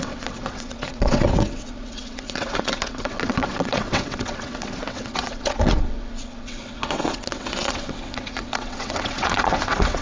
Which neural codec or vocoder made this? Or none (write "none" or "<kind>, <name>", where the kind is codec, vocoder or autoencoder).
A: vocoder, WaveNeXt